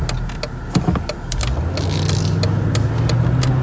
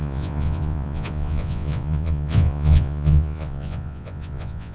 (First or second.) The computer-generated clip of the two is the second